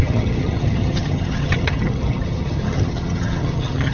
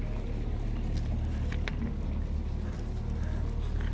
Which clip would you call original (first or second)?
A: second